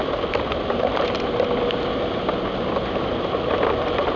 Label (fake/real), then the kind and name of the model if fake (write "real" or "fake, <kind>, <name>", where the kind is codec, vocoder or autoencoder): real